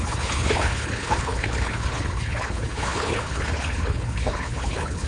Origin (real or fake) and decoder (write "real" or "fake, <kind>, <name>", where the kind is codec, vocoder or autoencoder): fake, codec, HILCodec